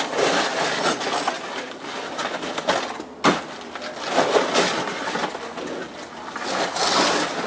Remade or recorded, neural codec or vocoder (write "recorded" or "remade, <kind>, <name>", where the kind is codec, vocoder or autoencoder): recorded